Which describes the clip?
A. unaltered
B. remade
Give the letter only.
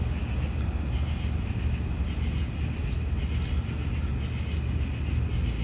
A